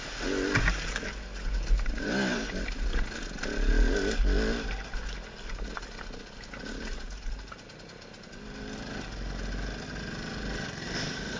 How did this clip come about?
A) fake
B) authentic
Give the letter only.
B